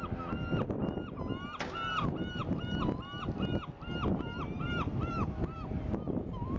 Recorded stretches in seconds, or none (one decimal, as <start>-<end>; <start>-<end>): 0.0-6.6